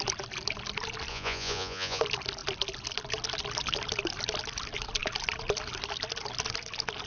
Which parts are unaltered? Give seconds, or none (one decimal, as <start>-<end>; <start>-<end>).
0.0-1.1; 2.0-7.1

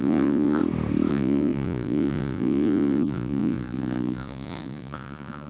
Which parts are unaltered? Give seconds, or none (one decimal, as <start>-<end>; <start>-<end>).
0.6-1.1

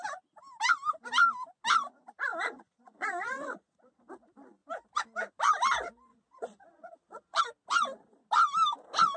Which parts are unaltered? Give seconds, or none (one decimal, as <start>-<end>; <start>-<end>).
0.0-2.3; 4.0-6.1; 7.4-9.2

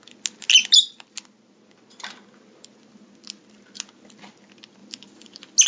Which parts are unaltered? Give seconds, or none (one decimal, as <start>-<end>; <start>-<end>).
0.0-5.7

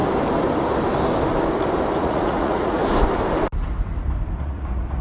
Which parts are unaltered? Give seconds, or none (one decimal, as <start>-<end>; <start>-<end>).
0.0-2.0; 2.8-4.4